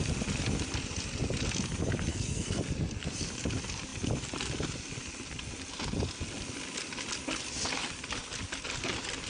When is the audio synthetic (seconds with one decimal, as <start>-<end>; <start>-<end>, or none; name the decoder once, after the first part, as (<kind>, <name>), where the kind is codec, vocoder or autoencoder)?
2.1-2.6 (codec, SNAC)